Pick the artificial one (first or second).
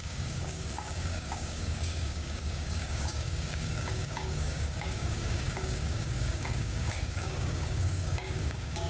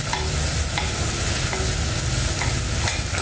first